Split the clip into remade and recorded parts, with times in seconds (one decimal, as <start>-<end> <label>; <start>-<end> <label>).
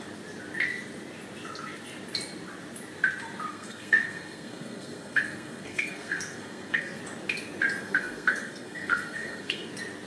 0.0-3.5 recorded; 3.5-7.0 remade; 7.0-7.8 recorded; 7.8-9.7 remade; 9.7-10.1 recorded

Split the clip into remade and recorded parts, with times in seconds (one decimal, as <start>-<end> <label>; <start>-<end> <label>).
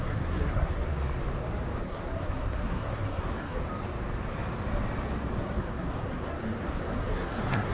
0.0-0.9 remade; 0.9-1.8 recorded; 1.8-3.6 remade; 3.6-5.4 recorded; 5.4-7.7 remade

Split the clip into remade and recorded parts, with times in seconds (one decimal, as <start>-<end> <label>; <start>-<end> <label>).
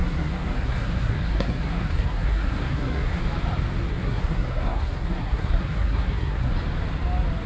0.0-3.2 remade; 3.2-3.9 recorded; 3.9-6.5 remade; 6.5-7.5 recorded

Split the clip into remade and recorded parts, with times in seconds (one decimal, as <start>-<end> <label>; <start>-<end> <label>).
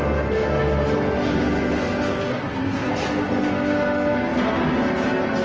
0.0-2.3 recorded; 2.3-2.9 remade; 2.9-5.4 recorded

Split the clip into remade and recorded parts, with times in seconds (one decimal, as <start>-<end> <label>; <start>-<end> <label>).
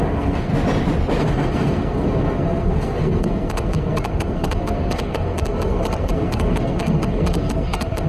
0.0-0.5 remade; 0.5-1.2 recorded; 1.2-8.1 remade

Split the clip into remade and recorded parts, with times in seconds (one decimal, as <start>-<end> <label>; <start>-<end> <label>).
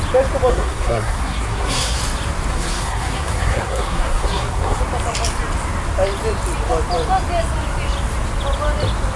0.0-0.5 recorded; 0.5-2.0 remade; 2.0-2.5 recorded; 2.5-4.8 remade; 4.8-9.2 recorded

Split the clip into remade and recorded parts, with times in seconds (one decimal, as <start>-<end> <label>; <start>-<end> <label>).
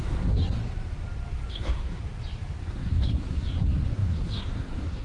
0.0-0.6 remade; 0.6-1.5 recorded; 1.5-2.0 remade; 2.0-2.6 recorded; 2.6-5.0 remade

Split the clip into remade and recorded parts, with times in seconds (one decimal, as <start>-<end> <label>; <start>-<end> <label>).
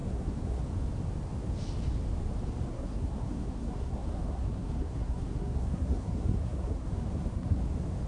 0.0-0.6 remade; 0.6-2.7 recorded; 2.7-7.6 remade; 7.6-8.1 recorded